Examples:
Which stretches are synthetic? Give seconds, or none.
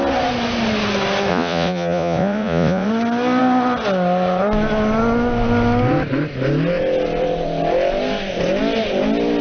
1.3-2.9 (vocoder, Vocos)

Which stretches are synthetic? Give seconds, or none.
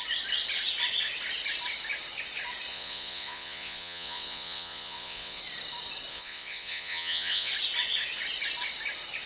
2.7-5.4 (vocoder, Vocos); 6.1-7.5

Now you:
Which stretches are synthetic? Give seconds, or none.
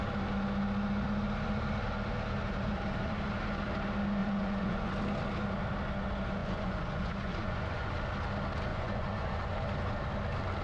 4.2-4.9 (vocoder, Vocos); 6.4-7.9; 8.7-9.4